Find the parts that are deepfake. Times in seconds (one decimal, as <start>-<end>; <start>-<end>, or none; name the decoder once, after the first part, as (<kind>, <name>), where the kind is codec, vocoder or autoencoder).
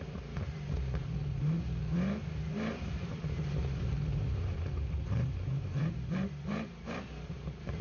0.0-7.8 (vocoder, BigVGAN v2)